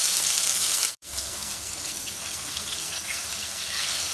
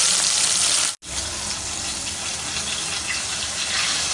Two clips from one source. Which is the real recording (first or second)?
second